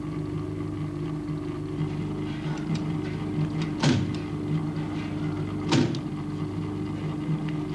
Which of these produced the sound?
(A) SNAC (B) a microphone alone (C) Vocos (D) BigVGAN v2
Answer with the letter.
B